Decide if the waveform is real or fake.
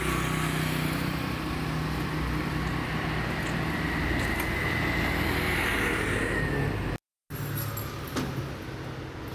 real